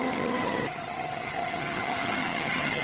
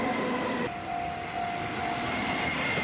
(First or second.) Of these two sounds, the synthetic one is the first